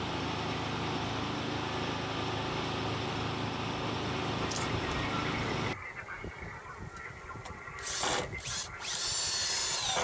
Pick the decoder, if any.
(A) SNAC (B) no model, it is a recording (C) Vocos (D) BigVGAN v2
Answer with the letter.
B